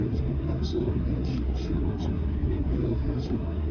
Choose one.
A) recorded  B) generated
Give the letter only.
B